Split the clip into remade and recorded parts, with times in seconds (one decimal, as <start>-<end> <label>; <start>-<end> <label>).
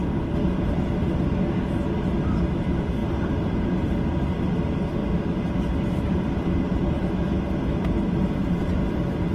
0.0-3.0 recorded; 3.0-4.0 remade; 4.0-5.0 recorded; 5.0-7.2 remade; 7.2-8.4 recorded; 8.4-9.3 remade